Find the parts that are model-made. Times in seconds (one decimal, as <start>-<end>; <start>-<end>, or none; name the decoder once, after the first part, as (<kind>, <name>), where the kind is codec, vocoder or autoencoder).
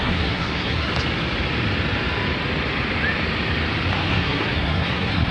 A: 0.0-0.9 (codec, SNAC); 4.1-5.3